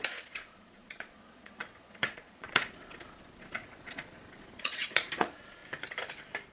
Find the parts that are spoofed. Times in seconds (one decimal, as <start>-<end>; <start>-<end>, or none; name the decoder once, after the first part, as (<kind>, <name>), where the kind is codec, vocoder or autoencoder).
0.0-5.6 (vocoder, Vocos)